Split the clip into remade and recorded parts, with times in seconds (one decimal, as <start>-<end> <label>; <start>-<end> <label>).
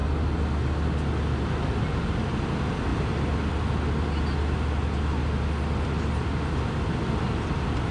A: 0.0-7.9 recorded